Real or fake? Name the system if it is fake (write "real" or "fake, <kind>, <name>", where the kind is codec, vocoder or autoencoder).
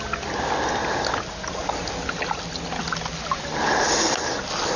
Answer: real